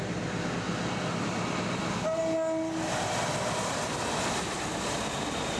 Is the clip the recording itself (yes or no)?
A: yes